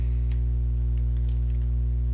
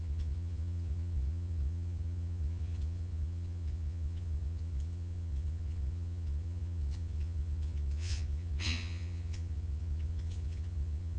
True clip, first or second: first